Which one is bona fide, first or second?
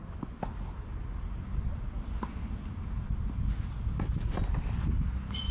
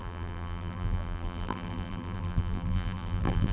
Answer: first